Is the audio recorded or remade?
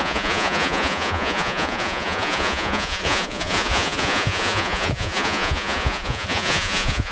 remade